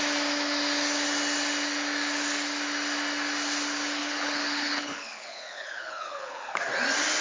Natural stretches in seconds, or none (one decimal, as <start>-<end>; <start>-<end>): 0.0-4.0; 6.5-7.2